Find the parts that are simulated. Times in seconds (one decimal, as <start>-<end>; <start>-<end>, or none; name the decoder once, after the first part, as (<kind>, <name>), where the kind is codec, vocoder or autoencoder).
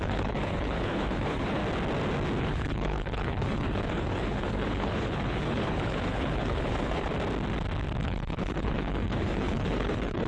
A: 0.0-1.6 (codec, HILCodec); 2.4-7.1; 8.0-10.3